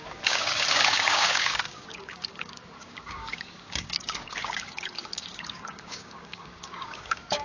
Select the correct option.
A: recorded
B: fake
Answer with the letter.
B